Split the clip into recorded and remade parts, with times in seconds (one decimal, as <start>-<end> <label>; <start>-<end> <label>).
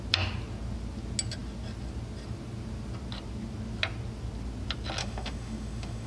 0.0-5.0 recorded; 5.0-6.1 remade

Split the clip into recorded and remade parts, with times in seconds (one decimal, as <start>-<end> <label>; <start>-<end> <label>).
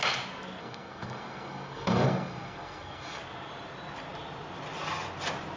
0.0-0.6 recorded; 0.6-3.2 remade; 3.2-5.6 recorded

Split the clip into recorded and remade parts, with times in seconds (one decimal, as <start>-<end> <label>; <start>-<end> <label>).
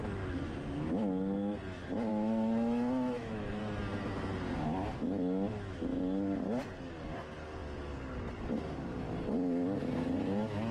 0.0-2.1 recorded; 2.1-3.6 remade; 3.6-10.7 recorded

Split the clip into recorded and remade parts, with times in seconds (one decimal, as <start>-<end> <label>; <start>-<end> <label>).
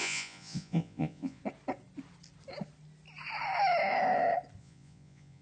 0.0-1.4 remade; 1.4-4.6 recorded; 4.6-5.4 remade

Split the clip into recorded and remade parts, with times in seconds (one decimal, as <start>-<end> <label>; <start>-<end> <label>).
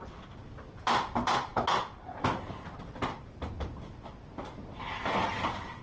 0.0-5.8 recorded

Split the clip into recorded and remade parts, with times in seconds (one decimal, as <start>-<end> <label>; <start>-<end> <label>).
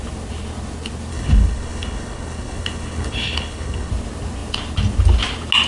0.0-1.1 recorded; 1.1-3.9 remade; 3.9-5.7 recorded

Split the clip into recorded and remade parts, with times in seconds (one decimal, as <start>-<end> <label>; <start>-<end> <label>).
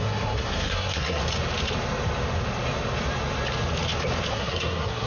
0.0-1.2 remade; 1.2-4.3 recorded; 4.3-5.1 remade